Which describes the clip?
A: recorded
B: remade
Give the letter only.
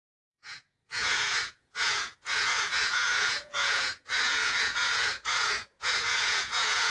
B